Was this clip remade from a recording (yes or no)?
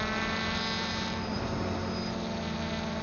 no